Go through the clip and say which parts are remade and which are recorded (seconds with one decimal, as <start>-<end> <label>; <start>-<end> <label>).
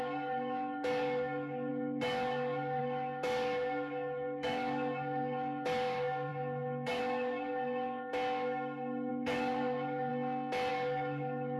0.0-8.1 remade; 8.1-9.1 recorded; 9.1-10.1 remade; 10.1-10.7 recorded; 10.7-11.6 remade